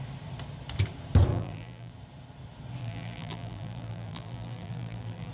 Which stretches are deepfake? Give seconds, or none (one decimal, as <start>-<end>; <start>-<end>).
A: 1.3-1.9; 2.8-5.3